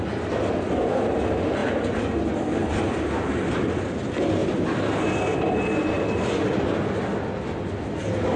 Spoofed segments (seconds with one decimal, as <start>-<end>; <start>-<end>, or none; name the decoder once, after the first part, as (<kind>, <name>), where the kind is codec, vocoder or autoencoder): none